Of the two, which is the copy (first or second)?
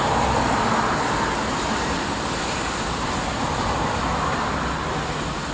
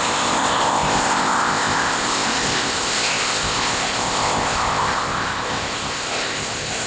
second